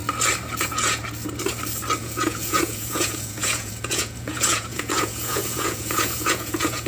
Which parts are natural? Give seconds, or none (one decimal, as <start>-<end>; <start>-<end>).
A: 0.0-0.6; 1.0-2.0